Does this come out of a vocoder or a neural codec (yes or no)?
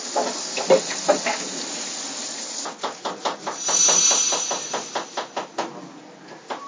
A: no